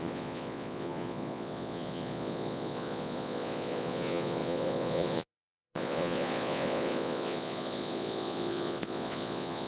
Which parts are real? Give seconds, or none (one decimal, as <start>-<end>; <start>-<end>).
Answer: none